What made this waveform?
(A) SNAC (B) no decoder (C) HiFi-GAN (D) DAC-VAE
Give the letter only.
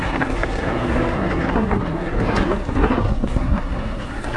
A